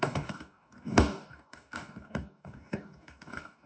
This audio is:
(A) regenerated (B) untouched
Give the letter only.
A